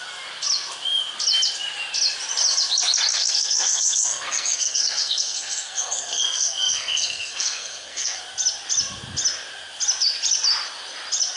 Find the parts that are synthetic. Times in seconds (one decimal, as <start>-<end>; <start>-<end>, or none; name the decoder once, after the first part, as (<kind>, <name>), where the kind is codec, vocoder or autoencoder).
3.1-8.2 (codec, SNAC)